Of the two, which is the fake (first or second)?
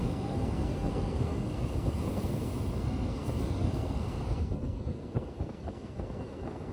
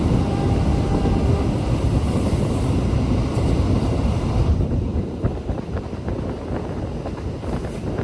first